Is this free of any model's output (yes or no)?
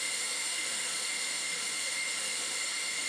no